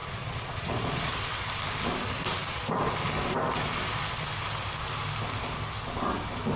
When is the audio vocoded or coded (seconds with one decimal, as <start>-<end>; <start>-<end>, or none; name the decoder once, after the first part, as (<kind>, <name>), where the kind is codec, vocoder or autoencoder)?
0.0-1.1 (vocoder, Vocos)